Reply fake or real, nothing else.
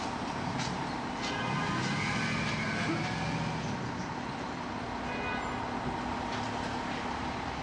real